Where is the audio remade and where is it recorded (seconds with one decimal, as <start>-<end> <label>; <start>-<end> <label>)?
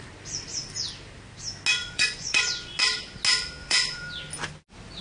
0.0-1.8 recorded; 1.8-2.8 remade; 2.8-3.6 recorded; 3.6-4.1 remade; 4.1-5.0 recorded